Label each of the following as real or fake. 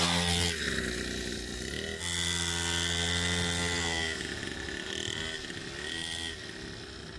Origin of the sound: real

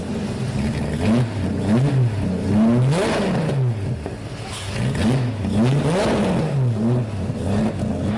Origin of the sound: real